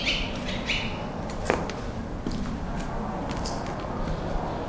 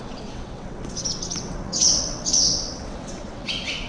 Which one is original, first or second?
first